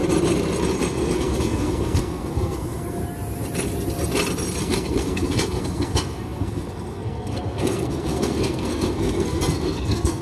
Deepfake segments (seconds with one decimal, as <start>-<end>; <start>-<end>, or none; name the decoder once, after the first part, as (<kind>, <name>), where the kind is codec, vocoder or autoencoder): 0.9-3.0 (codec, SNAC); 4.6-10.2